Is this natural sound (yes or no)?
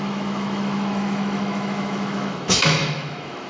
no